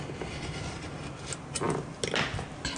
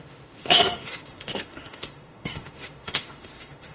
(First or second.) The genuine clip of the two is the first